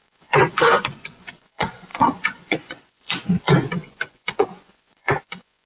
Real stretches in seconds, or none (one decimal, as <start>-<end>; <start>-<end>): none